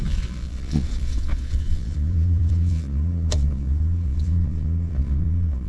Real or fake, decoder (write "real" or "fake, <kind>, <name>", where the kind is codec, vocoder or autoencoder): fake, vocoder, Vocos